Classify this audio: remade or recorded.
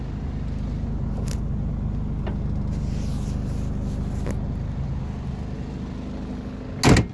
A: recorded